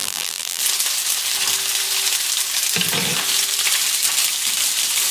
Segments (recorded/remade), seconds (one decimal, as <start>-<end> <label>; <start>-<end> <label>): 0.0-0.6 remade; 0.6-5.1 recorded